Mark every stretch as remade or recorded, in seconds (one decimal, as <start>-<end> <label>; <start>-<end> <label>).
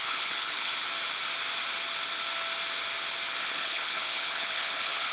0.0-0.7 remade; 0.7-3.4 recorded; 3.4-5.1 remade